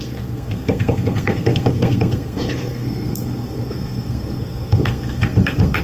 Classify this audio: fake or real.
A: fake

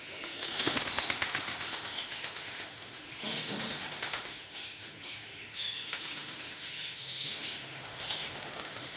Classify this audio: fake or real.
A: fake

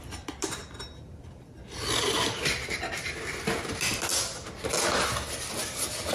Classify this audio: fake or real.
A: real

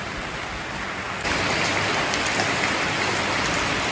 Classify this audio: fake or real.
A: real